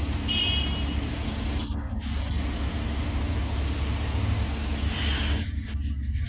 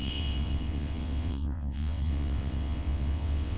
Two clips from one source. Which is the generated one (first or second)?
second